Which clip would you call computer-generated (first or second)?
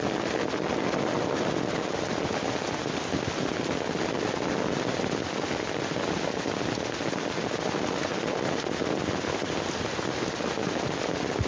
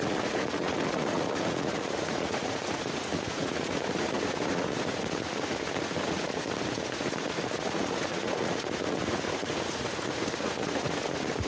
second